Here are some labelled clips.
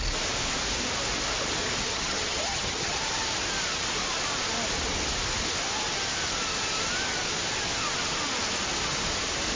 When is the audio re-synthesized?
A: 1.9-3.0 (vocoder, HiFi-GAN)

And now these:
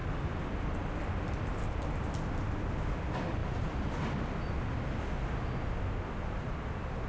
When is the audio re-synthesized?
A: 3.4-3.9 (vocoder, BigVGAN v2)